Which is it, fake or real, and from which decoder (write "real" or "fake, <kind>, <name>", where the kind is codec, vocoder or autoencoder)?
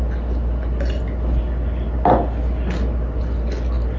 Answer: real